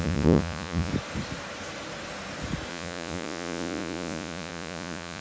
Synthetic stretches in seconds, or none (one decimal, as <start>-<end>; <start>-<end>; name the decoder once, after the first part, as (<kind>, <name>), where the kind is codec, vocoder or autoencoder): 0.0-0.9 (vocoder, Vocos); 2.7-5.2